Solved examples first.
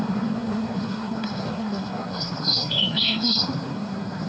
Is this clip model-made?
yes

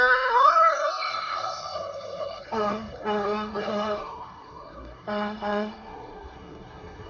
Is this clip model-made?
yes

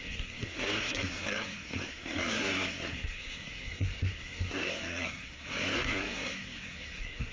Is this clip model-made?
yes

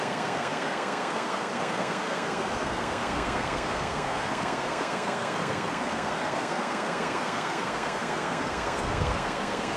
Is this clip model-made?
yes